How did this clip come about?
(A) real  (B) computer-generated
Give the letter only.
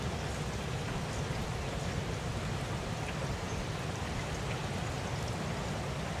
A